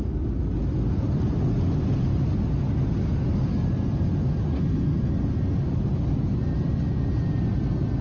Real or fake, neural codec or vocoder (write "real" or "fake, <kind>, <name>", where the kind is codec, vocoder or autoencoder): real